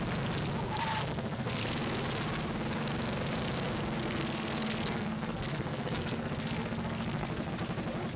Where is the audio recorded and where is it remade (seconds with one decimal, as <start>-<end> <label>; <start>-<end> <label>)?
0.0-1.0 recorded; 1.0-1.6 remade; 1.6-4.0 recorded; 4.0-7.5 remade; 7.5-8.2 recorded